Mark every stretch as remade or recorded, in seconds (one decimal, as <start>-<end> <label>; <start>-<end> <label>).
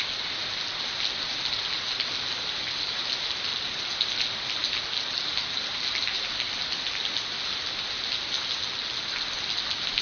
0.0-10.0 recorded